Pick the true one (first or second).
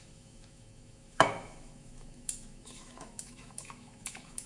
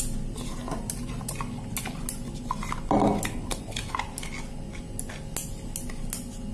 second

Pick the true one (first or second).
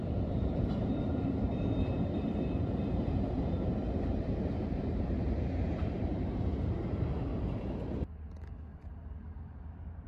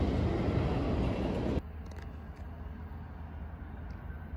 second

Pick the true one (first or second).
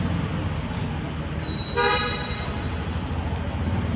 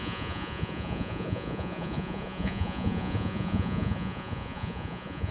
first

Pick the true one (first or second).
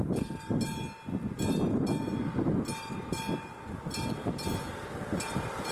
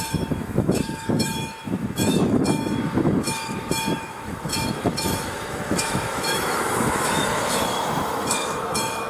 first